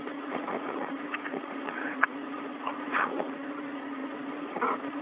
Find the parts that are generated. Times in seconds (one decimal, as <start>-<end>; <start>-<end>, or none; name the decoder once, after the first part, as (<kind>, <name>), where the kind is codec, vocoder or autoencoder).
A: 0.0-5.0 (vocoder, Vocos)